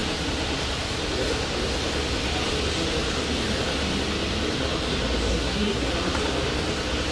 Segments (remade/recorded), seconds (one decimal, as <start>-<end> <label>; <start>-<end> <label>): 0.0-5.3 recorded; 5.3-5.9 remade; 5.9-7.1 recorded